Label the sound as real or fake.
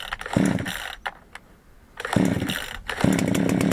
real